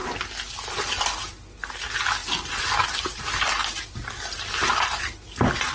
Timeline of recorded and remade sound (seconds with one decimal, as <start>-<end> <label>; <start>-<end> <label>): 0.0-5.7 recorded